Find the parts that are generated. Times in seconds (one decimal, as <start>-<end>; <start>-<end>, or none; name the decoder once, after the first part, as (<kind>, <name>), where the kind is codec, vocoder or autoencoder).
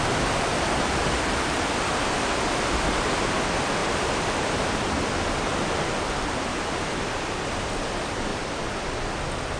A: 3.8-4.8 (vocoder, BigVGAN v2); 5.5-7.1; 8.3-8.9